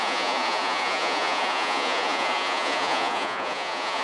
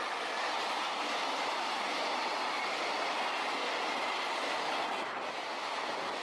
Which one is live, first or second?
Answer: second